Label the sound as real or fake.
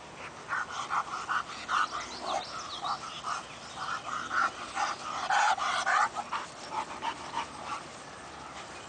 real